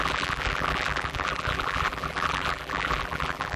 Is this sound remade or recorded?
remade